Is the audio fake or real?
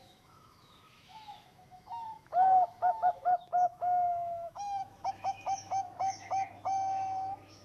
fake